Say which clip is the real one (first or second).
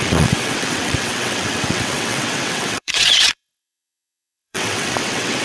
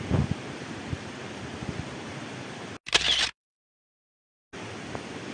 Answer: second